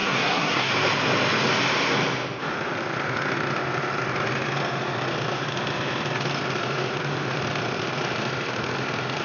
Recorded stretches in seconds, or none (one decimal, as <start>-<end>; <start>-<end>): 0.7-9.2